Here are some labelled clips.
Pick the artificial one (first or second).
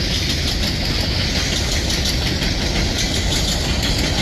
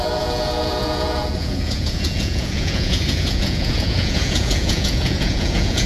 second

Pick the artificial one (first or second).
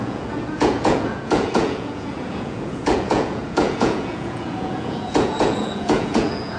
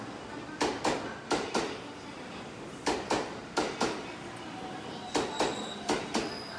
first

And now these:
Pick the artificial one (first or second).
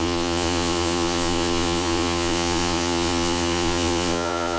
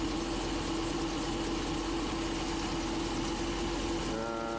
first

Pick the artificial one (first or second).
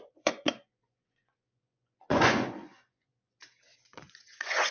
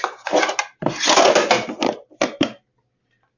first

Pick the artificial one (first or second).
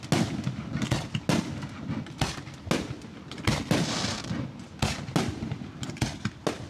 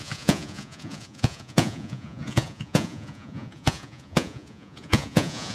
second